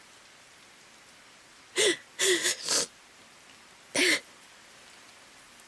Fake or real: real